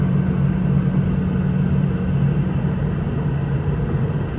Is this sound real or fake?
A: real